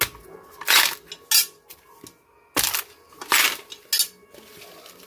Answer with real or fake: real